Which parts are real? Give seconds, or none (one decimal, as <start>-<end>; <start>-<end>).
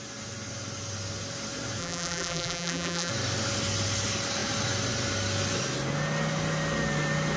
0.0-1.8; 3.1-7.4